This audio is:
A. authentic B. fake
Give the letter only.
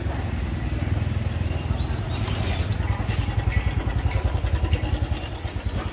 A